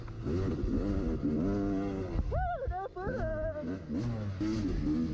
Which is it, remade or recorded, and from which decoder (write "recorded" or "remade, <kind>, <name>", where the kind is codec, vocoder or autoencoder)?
recorded